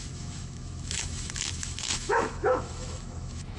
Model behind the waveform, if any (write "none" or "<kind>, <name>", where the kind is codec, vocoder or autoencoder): autoencoder, DAC-VAE